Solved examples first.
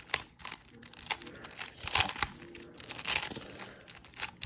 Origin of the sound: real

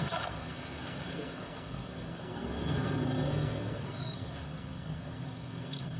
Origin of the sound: fake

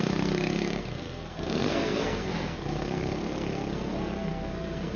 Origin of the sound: fake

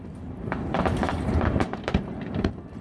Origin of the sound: fake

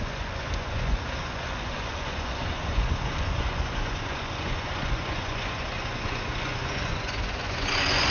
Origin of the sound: fake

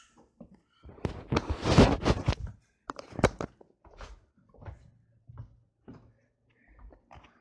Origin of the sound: fake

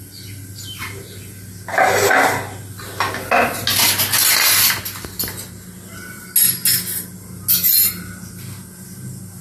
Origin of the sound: real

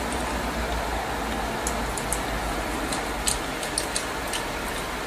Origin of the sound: real